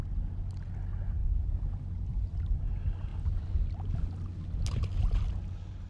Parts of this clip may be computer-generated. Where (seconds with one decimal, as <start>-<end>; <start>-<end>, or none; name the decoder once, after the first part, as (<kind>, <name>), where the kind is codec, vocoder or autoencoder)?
none